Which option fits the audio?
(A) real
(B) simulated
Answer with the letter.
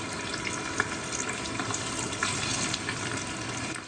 A